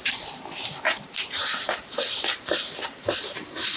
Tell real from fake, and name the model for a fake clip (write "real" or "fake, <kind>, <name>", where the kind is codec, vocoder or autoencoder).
fake, vocoder, BigVGAN v2